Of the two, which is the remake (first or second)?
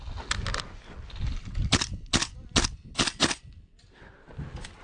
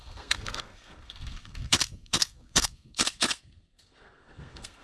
second